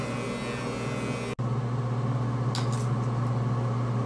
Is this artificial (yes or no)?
no